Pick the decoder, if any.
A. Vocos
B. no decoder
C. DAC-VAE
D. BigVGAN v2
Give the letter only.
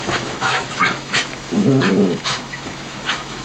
C